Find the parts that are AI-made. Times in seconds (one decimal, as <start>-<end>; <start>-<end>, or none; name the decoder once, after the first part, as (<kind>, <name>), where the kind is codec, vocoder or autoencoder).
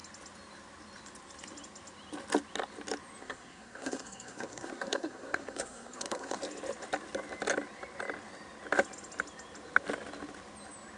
3.2-6.4 (codec, SNAC)